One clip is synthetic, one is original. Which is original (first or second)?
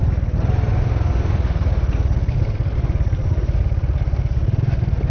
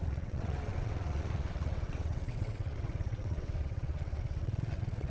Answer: first